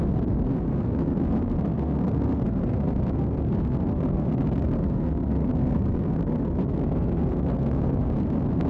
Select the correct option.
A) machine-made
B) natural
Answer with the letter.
A